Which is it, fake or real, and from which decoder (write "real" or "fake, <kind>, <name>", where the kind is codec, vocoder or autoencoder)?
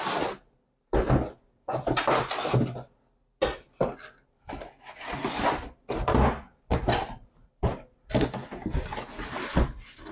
real